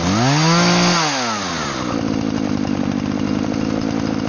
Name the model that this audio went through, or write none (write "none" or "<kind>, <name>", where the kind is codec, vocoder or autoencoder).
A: none